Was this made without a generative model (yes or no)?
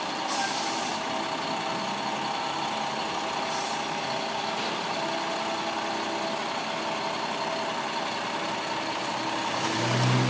yes